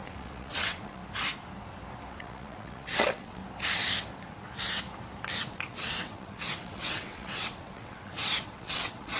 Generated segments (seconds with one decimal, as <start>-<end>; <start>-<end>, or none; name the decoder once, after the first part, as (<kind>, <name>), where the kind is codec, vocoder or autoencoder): 0.0-1.0 (vocoder, WaveNeXt); 2.1-3.4; 5.4-9.2